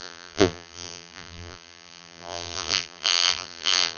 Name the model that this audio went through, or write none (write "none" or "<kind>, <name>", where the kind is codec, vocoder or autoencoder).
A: vocoder, BigVGAN v2